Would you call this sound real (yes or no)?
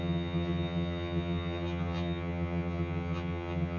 no